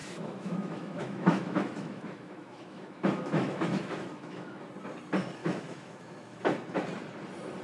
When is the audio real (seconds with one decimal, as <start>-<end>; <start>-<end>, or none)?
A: 4.6-5.4; 6.4-7.6